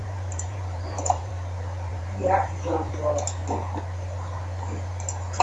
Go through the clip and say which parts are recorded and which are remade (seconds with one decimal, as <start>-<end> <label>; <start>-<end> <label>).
0.0-1.3 remade; 1.3-1.9 recorded; 1.9-2.9 remade; 2.9-5.4 recorded